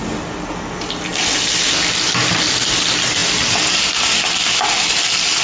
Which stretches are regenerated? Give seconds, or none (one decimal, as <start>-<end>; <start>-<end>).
none